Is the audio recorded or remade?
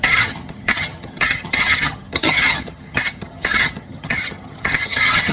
remade